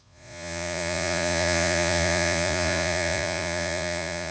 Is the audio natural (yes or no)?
no